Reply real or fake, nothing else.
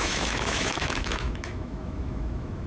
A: fake